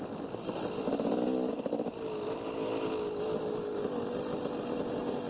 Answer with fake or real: real